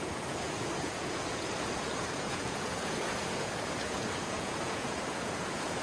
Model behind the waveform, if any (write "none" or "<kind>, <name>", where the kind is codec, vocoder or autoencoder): vocoder, Vocos